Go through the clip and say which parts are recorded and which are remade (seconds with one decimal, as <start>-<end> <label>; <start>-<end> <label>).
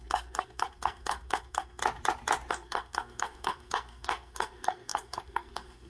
0.0-1.8 remade; 1.8-2.5 recorded; 2.5-5.9 remade